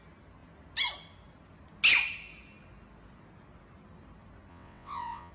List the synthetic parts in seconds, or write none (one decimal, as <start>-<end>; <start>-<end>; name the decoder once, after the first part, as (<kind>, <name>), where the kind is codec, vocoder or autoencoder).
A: 4.5-5.3 (vocoder, WaveNeXt)